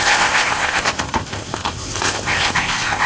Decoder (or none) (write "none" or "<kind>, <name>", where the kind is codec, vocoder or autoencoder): codec, ZipCodec